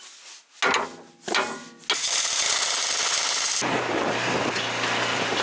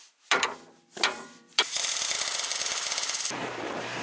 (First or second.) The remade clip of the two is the second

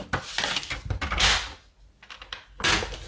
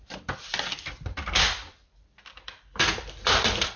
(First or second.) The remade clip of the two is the second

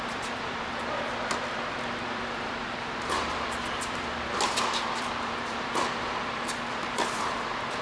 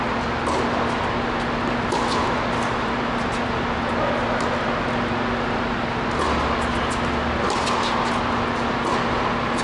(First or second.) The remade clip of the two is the first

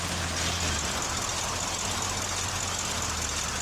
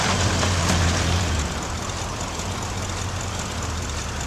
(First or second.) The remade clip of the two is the second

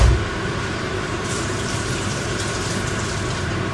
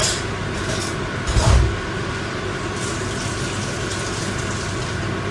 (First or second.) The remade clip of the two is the first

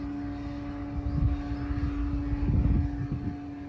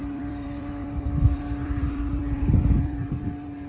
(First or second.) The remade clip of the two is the second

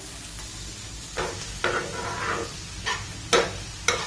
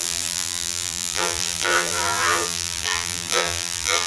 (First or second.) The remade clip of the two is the second